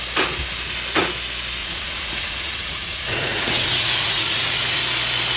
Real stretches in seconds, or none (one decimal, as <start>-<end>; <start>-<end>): 0.0-1.6; 4.8-5.4